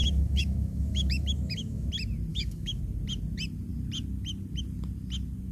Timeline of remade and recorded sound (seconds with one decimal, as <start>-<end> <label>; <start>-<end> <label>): 0.0-1.9 remade; 1.9-2.3 recorded; 2.3-2.8 remade; 2.8-5.5 recorded